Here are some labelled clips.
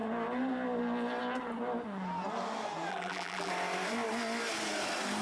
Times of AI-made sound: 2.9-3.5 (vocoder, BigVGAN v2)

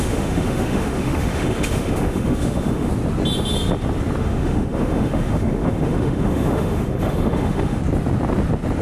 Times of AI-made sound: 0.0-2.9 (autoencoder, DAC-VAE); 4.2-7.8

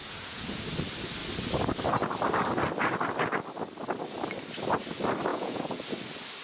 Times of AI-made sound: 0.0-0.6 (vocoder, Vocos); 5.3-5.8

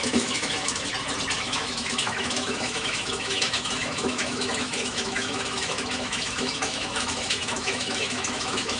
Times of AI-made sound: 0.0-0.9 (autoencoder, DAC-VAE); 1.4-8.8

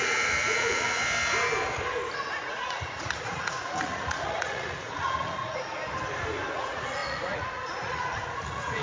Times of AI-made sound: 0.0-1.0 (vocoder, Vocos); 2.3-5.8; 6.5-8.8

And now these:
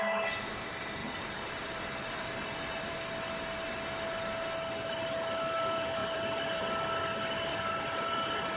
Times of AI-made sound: 1.0-2.9 (vocoder, BigVGAN v2); 6.0-7.0; 7.5-8.6

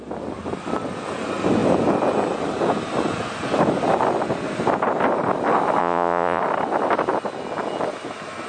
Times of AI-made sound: 5.8-6.4 (vocoder, Vocos)

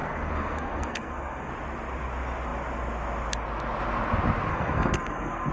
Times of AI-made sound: 0.0-1.5 (codec, SNAC); 4.5-5.5